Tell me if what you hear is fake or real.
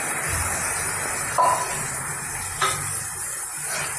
real